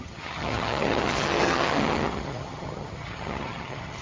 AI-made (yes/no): yes